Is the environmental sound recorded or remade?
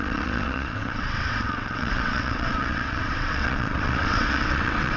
remade